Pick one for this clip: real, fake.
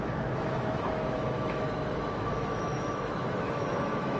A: fake